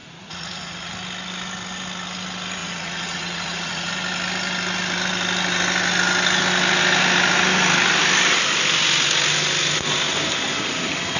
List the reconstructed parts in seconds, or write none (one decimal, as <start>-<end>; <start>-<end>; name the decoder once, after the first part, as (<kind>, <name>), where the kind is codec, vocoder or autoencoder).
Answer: 0.0-0.9 (vocoder, Vocos); 2.6-3.9